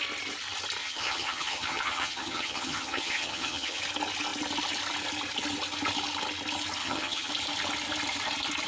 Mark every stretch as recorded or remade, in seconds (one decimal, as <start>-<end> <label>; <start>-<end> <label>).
0.0-0.8 recorded; 0.8-3.8 remade; 3.8-6.8 recorded; 6.8-7.3 remade; 7.3-8.7 recorded